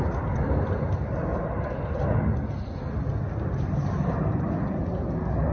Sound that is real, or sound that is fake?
real